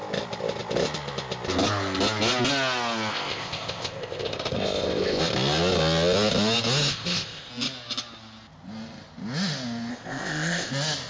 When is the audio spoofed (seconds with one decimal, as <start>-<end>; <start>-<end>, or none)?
3.1-5.2; 6.9-7.5; 9.9-10.7